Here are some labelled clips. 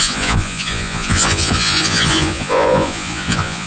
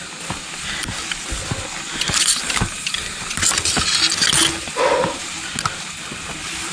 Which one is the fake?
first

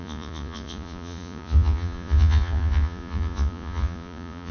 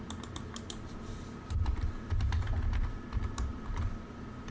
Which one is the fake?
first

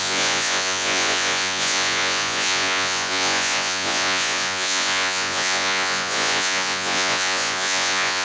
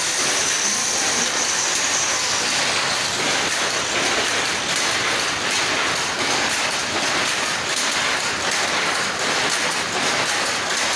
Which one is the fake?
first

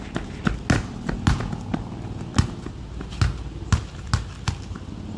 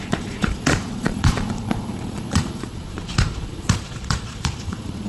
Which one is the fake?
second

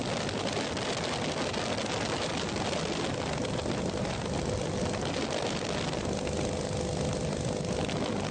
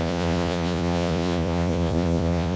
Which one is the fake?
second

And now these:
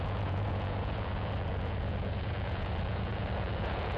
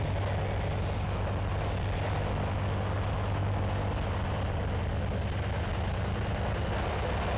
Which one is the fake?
first